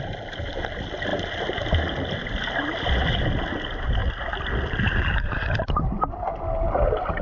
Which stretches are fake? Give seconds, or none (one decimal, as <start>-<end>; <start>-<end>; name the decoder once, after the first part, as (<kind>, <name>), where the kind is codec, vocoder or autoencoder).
none

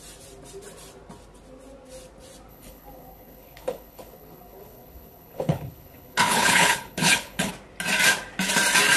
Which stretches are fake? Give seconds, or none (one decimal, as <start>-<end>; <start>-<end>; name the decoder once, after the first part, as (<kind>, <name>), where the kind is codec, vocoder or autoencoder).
2.5-7.5 (codec, HILCodec)